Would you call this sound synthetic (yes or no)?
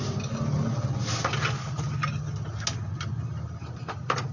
no